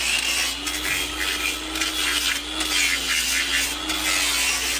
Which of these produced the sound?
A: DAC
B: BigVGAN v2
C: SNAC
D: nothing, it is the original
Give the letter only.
D